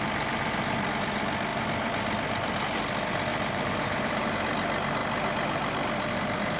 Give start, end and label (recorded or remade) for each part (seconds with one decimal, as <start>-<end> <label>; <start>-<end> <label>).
0.0-3.3 recorded; 3.3-4.4 remade; 4.4-6.6 recorded